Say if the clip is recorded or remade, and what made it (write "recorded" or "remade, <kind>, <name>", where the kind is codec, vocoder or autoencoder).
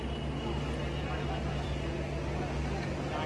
recorded